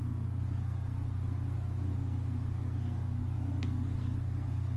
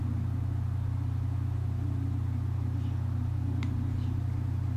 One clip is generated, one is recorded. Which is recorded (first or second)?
second